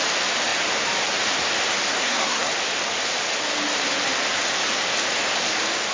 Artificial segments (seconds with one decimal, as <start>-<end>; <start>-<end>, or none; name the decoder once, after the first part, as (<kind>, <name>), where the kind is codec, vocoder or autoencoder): 2.0-2.5 (codec, SNAC)